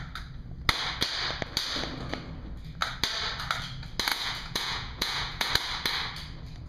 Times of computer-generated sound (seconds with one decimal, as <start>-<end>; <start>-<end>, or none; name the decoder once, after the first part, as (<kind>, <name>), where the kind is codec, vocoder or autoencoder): 4.1-5.5 (vocoder, Vocos)